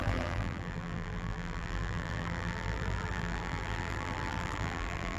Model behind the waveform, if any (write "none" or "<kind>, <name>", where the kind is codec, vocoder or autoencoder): vocoder, BigVGAN v2